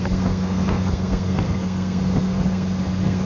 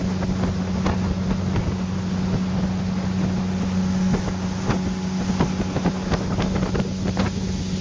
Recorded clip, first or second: second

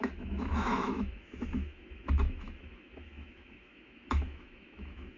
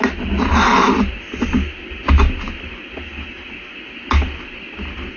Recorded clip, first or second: second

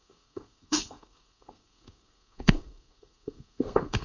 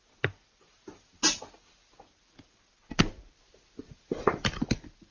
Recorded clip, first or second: second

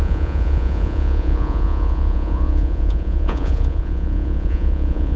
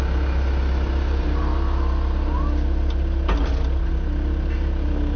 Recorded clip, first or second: second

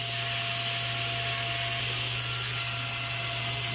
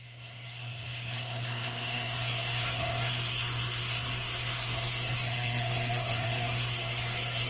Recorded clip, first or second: first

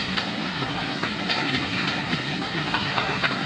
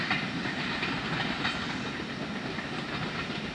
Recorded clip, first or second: second